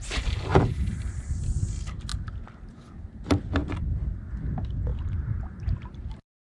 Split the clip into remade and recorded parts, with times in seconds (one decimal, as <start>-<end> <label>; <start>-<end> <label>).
0.0-0.5 recorded; 0.5-1.1 remade; 1.1-4.9 recorded; 4.9-6.4 remade